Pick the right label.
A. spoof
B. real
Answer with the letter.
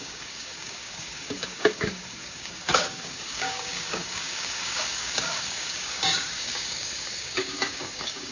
A